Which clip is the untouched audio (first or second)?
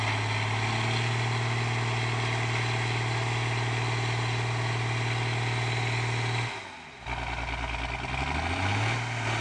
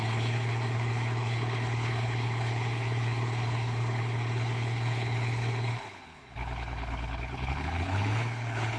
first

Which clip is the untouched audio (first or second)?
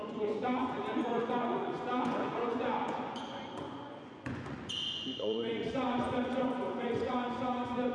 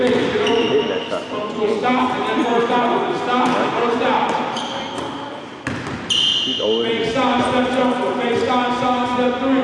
second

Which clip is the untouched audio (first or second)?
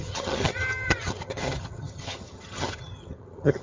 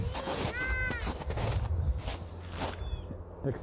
second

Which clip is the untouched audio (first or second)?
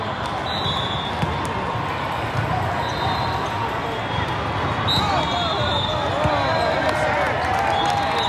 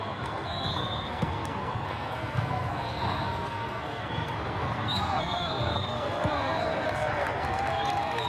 first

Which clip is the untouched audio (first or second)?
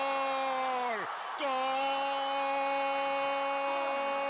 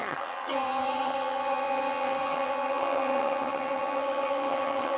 first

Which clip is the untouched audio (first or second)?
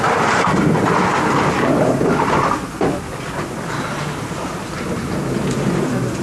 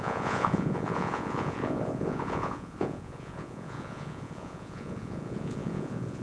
first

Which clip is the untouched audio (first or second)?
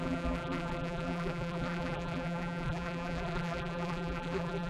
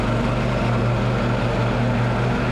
second